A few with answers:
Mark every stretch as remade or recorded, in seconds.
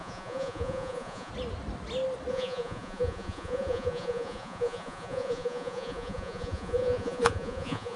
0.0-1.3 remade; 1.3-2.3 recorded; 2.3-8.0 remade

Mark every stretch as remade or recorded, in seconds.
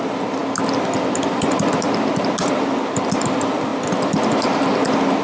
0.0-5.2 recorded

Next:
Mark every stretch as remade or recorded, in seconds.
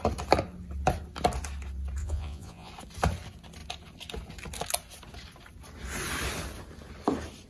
0.0-2.0 recorded; 2.0-2.7 remade; 2.7-7.5 recorded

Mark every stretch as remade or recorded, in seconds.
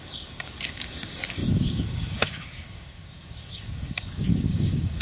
0.0-5.0 remade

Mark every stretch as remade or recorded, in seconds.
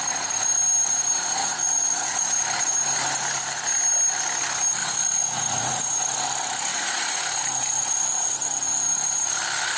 0.0-1.4 recorded; 1.4-2.2 remade; 2.2-4.8 recorded; 4.8-5.9 remade; 5.9-6.7 recorded; 6.7-7.4 remade; 7.4-9.8 recorded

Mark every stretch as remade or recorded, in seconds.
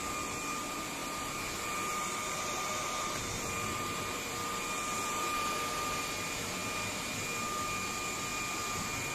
0.0-1.0 recorded; 1.0-5.5 remade; 5.5-8.3 recorded; 8.3-9.1 remade